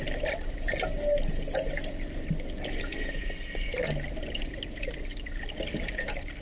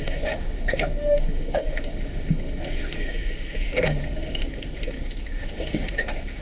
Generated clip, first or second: second